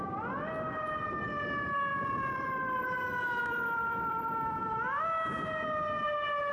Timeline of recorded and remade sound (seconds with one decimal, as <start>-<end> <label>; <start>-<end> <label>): 0.0-1.9 recorded; 1.9-5.0 remade; 5.0-6.5 recorded